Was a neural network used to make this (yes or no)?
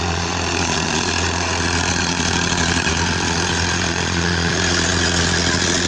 yes